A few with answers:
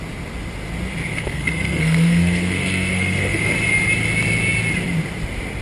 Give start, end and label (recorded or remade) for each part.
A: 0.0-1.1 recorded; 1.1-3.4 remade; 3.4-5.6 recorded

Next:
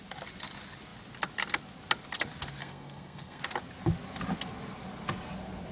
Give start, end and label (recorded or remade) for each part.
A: 0.0-2.6 recorded; 2.6-3.4 remade; 3.4-5.7 recorded